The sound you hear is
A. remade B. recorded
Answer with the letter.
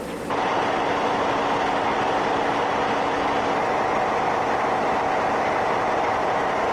B